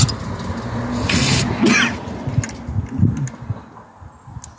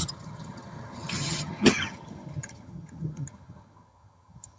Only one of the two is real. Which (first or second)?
first